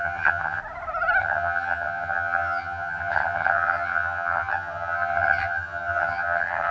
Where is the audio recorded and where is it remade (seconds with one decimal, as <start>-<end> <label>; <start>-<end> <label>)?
0.0-0.6 remade; 0.6-1.2 recorded; 1.2-6.7 remade